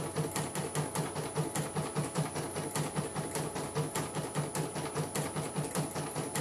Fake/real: real